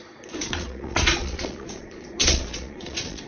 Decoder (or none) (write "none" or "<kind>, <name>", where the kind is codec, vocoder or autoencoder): vocoder, Vocos